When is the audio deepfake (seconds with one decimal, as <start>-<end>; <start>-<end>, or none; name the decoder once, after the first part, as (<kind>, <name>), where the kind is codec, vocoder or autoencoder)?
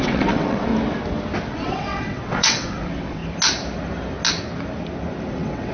0.0-0.7 (vocoder, WaveNeXt); 1.5-3.2; 5.3-5.7